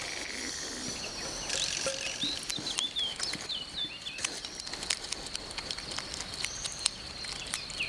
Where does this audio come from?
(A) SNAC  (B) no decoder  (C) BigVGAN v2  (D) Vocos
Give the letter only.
B